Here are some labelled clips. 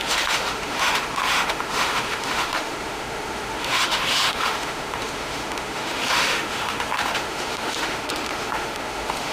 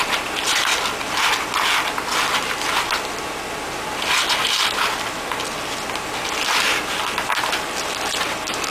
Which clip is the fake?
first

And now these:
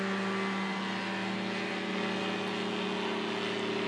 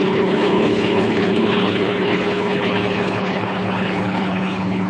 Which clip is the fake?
second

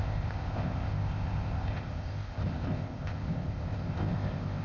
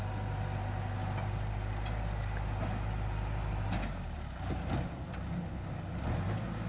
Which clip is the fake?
first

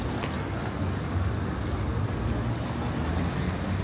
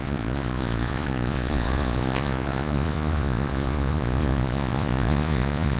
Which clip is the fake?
second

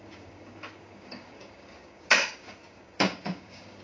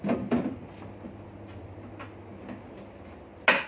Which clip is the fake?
first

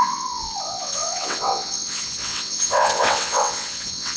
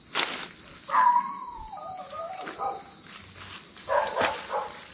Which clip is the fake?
first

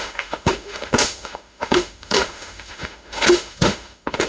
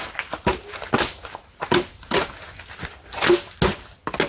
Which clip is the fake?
first